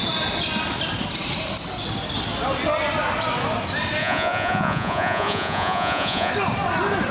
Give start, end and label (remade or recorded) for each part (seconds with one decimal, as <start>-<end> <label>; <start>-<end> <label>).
0.0-4.0 recorded; 4.0-6.3 remade; 6.3-7.1 recorded